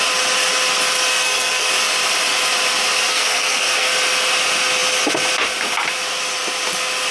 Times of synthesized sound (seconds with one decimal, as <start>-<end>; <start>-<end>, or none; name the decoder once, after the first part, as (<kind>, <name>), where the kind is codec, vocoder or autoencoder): 1.1-1.7 (codec, SNAC); 3.1-3.9